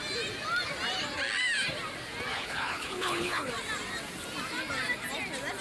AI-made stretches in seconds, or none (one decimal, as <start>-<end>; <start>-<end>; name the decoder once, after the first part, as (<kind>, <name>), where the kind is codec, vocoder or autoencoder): 2.3-3.5 (codec, HILCodec)